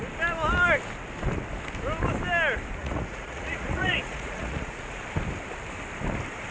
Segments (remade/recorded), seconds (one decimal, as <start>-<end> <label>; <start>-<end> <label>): 0.0-2.8 recorded; 2.8-5.0 remade; 5.0-6.5 recorded